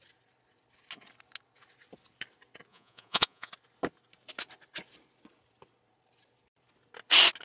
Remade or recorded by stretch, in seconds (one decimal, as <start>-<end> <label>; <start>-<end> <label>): 0.0-2.7 recorded; 2.7-3.5 remade; 3.5-7.4 recorded